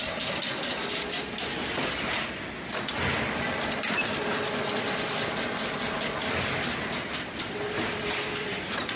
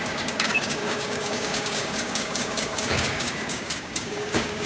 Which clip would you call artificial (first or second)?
second